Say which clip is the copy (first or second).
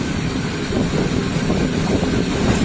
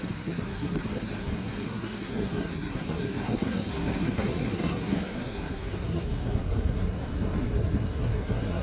second